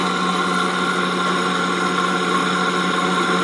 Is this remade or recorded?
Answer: recorded